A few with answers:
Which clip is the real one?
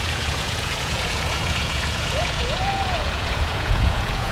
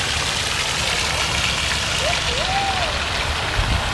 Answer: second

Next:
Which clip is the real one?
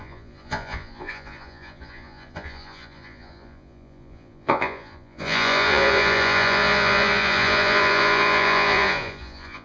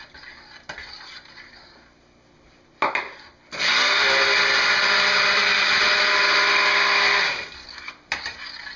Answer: second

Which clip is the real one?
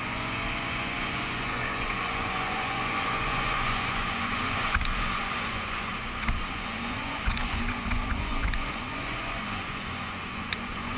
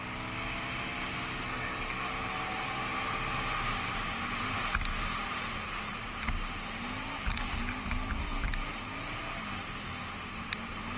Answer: second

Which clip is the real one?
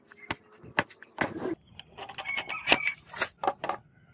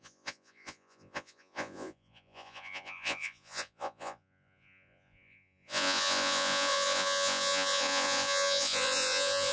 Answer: first